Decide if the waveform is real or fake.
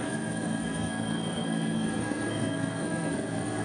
fake